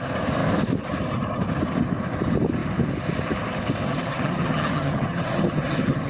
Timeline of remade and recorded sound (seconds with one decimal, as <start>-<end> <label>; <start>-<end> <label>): 0.0-3.9 recorded; 3.9-6.1 remade